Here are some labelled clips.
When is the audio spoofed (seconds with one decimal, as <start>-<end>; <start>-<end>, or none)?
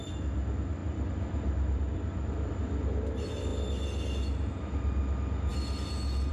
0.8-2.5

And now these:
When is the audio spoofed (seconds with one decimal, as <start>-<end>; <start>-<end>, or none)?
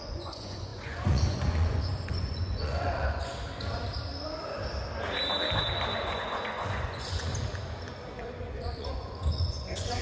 0.0-3.3; 6.0-7.3; 8.5-10.0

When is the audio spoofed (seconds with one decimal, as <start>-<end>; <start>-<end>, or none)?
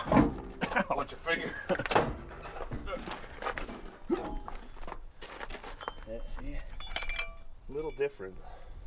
none